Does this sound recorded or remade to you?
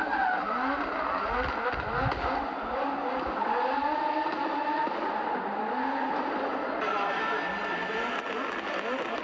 recorded